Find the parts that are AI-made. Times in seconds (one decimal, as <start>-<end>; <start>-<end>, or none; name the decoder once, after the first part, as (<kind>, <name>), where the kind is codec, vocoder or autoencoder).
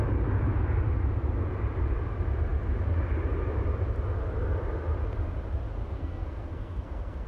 5.9-7.3 (codec, SNAC)